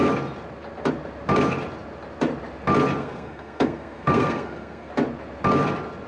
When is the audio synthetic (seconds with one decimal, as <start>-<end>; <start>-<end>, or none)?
3.0-4.9